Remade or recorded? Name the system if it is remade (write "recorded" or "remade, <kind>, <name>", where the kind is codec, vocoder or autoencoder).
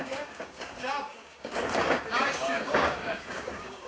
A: remade, codec, DAC